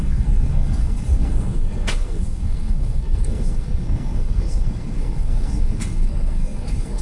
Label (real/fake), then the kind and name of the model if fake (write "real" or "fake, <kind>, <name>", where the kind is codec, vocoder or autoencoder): fake, codec, SNAC